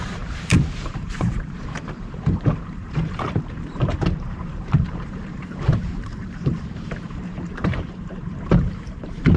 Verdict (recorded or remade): remade